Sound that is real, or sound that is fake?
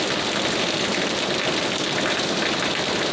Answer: real